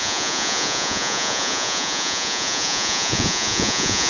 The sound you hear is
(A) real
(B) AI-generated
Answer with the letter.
B